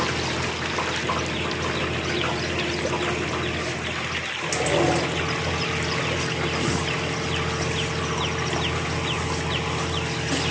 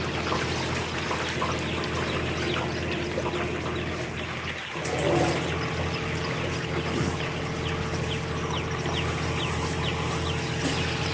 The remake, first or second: second